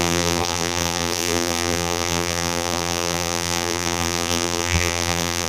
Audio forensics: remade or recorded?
remade